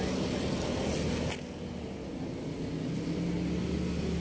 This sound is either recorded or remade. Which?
recorded